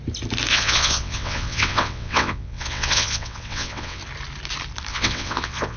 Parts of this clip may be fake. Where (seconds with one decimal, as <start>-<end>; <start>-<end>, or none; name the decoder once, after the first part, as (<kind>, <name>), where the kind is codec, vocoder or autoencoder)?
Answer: 0.5-4.0 (vocoder, WaveNeXt); 4.9-5.8